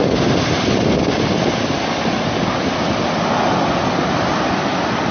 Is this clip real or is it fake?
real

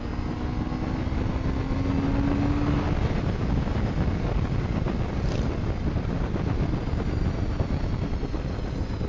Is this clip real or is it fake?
real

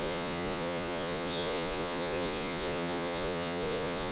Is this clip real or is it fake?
fake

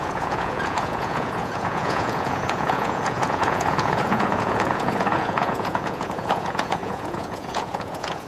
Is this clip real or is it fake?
fake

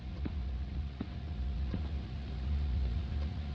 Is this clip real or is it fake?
fake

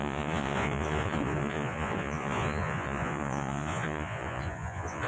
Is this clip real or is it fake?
fake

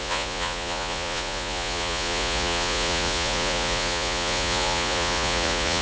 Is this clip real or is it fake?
fake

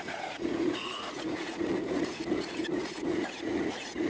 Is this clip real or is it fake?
fake